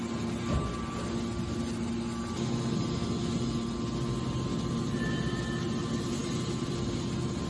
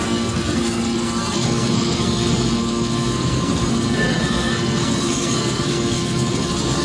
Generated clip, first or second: second